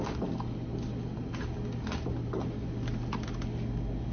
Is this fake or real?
real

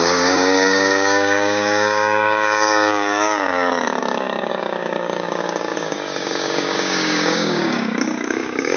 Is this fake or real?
fake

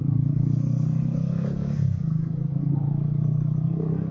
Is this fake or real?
fake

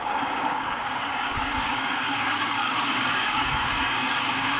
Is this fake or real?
fake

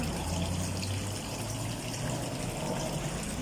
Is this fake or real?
real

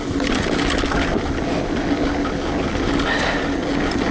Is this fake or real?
real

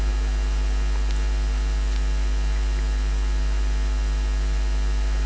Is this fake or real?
real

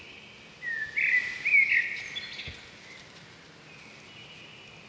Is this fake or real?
real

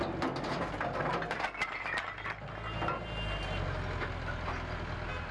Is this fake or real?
real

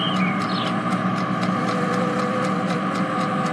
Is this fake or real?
real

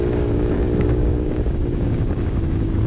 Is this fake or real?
fake